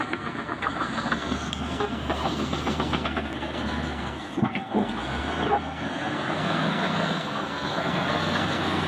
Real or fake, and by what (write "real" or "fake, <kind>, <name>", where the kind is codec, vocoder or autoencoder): fake, codec, SNAC